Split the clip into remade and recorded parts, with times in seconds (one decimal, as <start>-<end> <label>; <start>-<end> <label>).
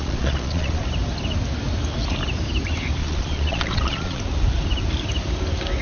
0.0-0.8 remade; 0.8-3.0 recorded; 3.0-4.2 remade; 4.2-5.8 recorded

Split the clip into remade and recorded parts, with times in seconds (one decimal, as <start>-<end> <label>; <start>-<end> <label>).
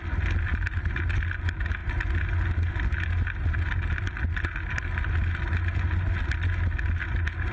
0.0-7.5 recorded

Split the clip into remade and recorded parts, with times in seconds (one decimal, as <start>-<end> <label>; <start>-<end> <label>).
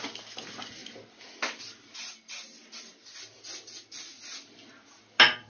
0.0-5.5 recorded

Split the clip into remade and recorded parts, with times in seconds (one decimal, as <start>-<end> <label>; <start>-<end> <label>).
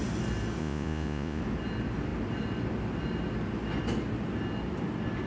0.0-0.6 recorded; 0.6-1.4 remade; 1.4-5.3 recorded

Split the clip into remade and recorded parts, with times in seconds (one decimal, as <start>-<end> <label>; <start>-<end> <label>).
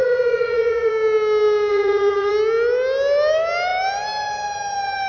0.0-0.9 remade; 0.9-1.7 recorded; 1.7-2.3 remade; 2.3-5.1 recorded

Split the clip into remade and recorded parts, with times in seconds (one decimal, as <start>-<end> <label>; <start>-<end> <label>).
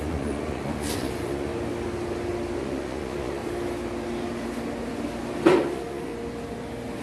0.0-1.5 remade; 1.5-2.6 recorded; 2.6-3.4 remade; 3.4-5.6 recorded; 5.6-6.1 remade; 6.1-7.0 recorded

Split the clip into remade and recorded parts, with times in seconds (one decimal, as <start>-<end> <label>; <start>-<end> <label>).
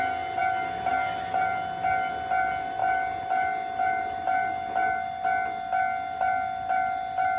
0.0-7.4 recorded